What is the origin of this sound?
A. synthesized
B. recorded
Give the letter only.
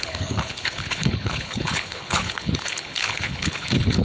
A